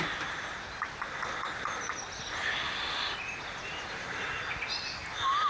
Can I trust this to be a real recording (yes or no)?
yes